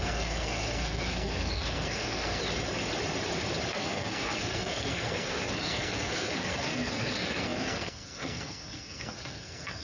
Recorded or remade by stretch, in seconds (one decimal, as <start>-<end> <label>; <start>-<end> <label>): 0.0-2.4 remade; 2.4-3.7 recorded; 3.7-9.8 remade

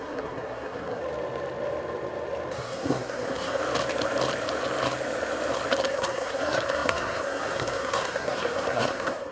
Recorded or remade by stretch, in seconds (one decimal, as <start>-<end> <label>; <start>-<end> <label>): 0.0-1.0 remade; 1.0-2.5 recorded; 2.5-3.6 remade; 3.6-5.8 recorded; 5.8-9.3 remade

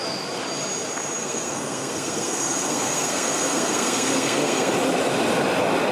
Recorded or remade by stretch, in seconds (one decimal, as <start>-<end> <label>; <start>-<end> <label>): 0.0-1.2 recorded; 1.2-4.7 remade; 4.7-5.9 recorded

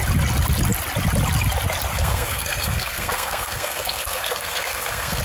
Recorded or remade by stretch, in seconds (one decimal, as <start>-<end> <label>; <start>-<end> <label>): 0.0-1.9 recorded; 1.9-5.2 remade

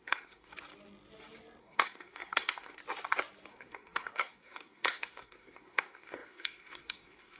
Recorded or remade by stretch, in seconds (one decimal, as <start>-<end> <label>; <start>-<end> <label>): 0.0-0.5 remade; 0.5-1.6 recorded; 1.6-2.8 remade; 2.8-3.5 recorded; 3.5-7.4 remade

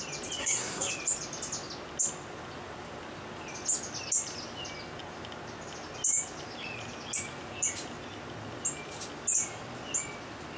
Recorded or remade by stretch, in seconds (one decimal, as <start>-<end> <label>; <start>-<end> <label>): 0.0-0.4 recorded; 0.4-0.9 remade; 0.9-10.6 recorded